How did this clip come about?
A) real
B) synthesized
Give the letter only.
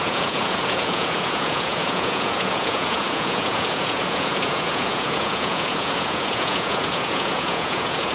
B